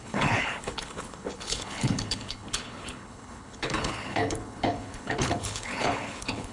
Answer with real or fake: fake